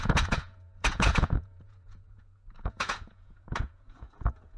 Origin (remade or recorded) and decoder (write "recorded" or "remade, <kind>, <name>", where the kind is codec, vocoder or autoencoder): remade, vocoder, Vocos